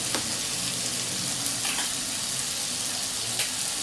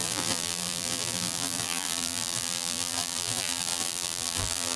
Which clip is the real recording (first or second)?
first